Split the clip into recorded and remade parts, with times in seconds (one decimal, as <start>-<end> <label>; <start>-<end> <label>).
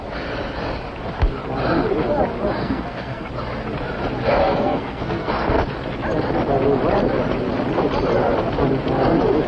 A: 0.0-2.6 recorded; 2.6-3.3 remade; 3.3-4.4 recorded; 4.4-5.6 remade; 5.6-9.5 recorded